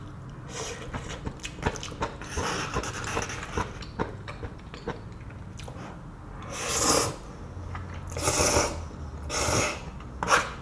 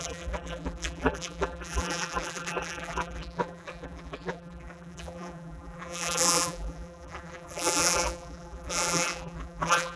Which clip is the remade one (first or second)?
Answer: second